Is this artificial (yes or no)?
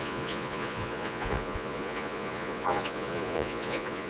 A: yes